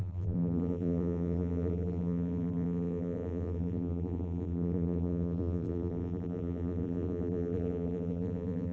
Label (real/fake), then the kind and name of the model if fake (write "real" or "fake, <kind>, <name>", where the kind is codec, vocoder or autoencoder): fake, vocoder, BigVGAN v2